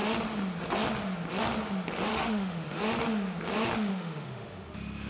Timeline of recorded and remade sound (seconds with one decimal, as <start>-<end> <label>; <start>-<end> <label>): 0.0-2.1 recorded; 2.1-2.8 remade; 2.8-3.9 recorded; 3.9-5.1 remade